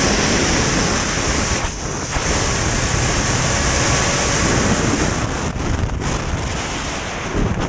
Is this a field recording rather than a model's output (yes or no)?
yes